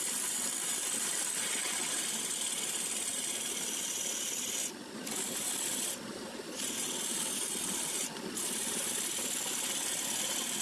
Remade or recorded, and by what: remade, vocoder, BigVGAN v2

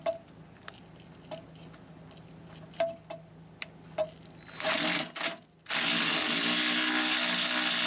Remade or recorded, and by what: recorded